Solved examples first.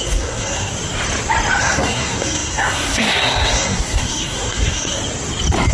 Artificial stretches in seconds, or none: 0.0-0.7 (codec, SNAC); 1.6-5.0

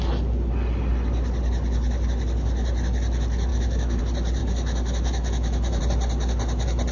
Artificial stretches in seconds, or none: 3.5-4.0 (autoencoder, DAC-VAE); 4.4-5.8

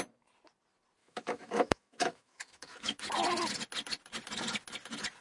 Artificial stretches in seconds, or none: 1.0-3.1 (autoencoder, DAC-VAE)

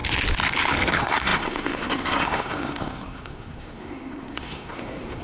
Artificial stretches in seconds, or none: 0.9-5.2 (codec, SNAC)

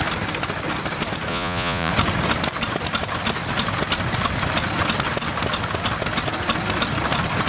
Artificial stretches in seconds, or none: 1.3-1.9 (vocoder, Vocos)